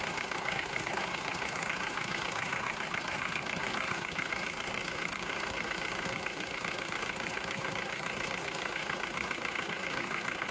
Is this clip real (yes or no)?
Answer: no